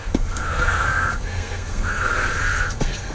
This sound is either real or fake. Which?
fake